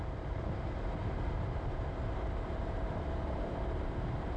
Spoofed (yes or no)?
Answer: yes